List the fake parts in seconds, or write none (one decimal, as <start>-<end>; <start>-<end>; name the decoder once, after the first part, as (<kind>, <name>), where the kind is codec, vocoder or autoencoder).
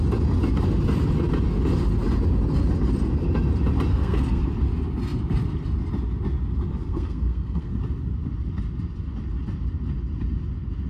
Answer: 3.9-4.4 (codec, SNAC); 6.7-7.7